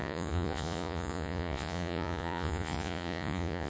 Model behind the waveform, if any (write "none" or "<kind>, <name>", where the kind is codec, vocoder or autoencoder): vocoder, Vocos